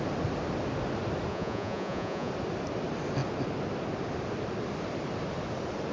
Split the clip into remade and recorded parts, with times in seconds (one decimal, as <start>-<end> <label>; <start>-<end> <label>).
0.0-1.3 recorded; 1.3-2.3 remade; 2.3-5.9 recorded